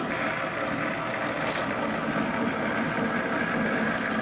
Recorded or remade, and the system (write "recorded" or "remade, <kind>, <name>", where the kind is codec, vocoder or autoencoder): recorded